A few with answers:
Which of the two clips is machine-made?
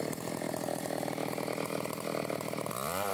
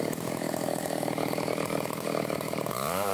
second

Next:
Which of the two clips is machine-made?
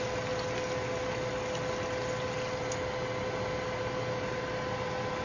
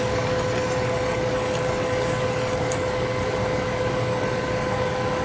second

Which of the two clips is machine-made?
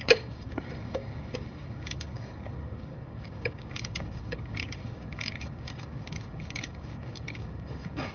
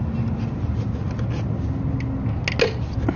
first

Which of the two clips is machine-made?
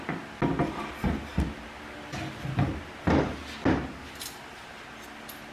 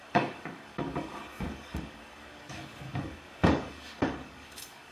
second